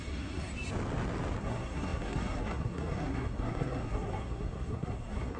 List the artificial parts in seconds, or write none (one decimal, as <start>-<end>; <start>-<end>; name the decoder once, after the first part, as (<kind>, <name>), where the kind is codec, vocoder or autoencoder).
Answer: 0.0-0.5 (codec, SNAC); 1.4-5.4

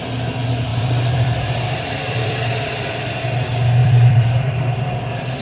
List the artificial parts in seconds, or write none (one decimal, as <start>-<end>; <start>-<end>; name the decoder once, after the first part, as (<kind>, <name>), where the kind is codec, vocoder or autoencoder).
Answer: 0.7-2.7 (vocoder, BigVGAN v2); 3.8-4.9

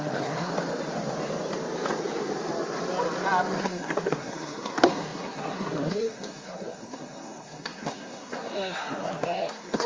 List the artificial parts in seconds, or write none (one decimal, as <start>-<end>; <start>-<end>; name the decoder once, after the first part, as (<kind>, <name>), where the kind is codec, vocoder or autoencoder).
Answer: 0.0-0.5 (codec, SNAC); 3.6-9.9

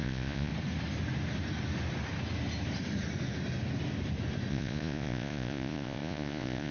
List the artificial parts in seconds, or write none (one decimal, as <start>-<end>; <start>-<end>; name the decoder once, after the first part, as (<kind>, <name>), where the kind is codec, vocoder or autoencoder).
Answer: 0.0-0.5 (vocoder, Vocos); 4.5-6.7

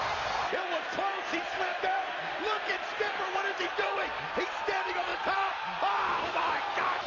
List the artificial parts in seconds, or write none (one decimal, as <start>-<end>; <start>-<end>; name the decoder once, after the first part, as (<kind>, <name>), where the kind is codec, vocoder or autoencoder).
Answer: 1.7-4.3 (vocoder, BigVGAN v2); 5.1-6.3

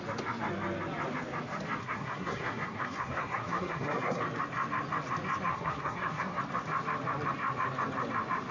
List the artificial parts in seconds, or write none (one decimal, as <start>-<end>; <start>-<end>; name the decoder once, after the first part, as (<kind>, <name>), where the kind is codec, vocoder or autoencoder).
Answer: 1.8-4.2 (codec, SNAC); 5.5-6.4